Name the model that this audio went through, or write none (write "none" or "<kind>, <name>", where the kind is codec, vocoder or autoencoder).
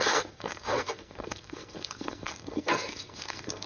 codec, SNAC